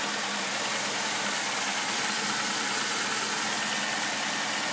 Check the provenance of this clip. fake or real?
real